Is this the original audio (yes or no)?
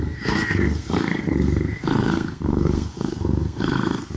no